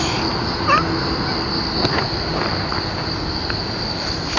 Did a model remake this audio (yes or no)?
no